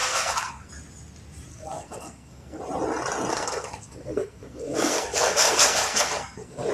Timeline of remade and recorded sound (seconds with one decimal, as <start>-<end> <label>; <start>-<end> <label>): 0.0-0.7 remade; 0.7-1.5 recorded; 1.5-2.6 remade; 2.6-3.3 recorded; 3.3-6.7 remade